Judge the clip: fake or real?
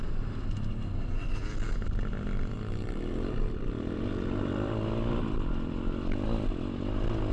real